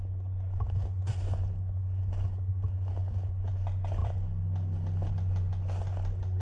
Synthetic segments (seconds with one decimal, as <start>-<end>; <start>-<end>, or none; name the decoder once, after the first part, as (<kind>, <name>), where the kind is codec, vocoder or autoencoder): none